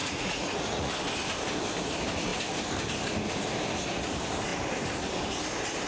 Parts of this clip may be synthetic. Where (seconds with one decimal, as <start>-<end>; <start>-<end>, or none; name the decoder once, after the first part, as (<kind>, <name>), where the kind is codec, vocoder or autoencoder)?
0.0-0.9 (vocoder, Vocos)